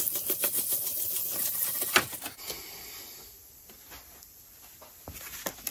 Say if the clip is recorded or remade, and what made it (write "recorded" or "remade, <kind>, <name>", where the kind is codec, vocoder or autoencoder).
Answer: recorded